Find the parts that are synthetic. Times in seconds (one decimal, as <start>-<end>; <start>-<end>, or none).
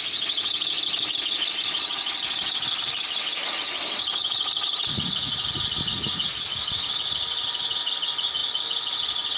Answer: 4.1-7.1